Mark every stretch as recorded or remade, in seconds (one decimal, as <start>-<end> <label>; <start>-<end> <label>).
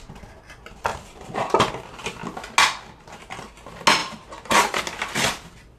0.0-0.9 recorded; 0.9-1.7 remade; 1.7-4.0 recorded; 4.0-4.8 remade; 4.8-5.8 recorded